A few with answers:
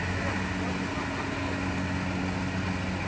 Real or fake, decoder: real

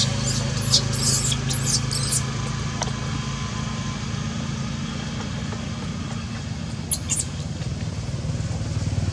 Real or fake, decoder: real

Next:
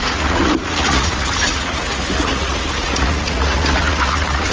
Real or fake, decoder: fake, vocoder, Vocos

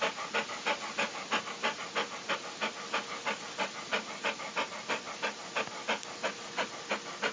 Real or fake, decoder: real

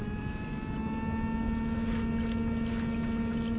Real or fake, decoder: real